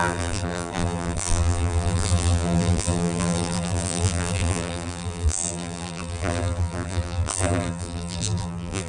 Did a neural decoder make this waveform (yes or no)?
yes